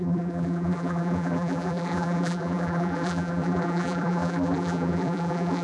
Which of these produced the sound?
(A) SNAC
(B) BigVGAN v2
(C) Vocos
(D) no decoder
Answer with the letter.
B